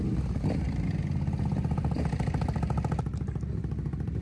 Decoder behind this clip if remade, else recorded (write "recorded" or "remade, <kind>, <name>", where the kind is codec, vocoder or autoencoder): remade, vocoder, BigVGAN v2